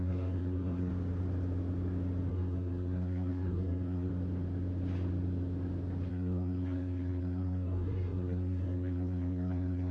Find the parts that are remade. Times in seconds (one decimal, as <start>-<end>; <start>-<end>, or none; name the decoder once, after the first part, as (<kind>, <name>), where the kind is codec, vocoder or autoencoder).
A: 0.0-0.9 (codec, SNAC); 2.3-4.1; 6.1-9.9